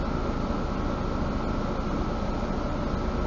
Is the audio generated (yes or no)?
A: no